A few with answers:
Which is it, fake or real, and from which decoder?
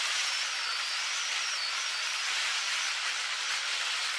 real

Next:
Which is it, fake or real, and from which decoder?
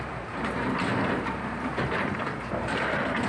fake, vocoder, BigVGAN v2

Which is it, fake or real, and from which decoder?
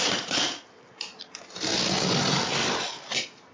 real